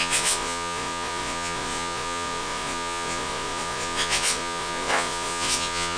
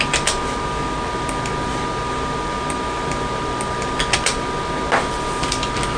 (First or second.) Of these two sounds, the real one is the second